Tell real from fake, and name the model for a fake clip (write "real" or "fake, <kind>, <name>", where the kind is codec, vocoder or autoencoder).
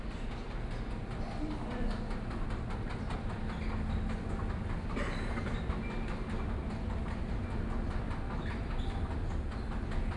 real